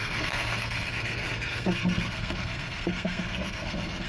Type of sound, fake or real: fake